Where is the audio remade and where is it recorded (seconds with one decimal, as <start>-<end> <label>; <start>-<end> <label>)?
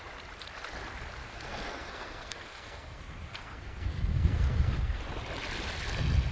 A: 0.0-1.2 recorded; 1.2-5.0 remade; 5.0-6.3 recorded